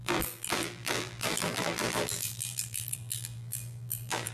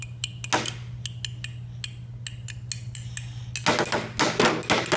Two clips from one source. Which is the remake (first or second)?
first